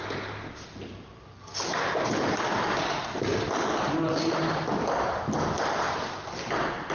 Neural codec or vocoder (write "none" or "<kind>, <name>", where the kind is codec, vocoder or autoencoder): none